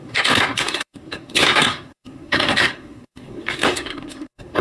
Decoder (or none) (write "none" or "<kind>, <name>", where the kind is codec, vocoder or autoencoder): codec, SNAC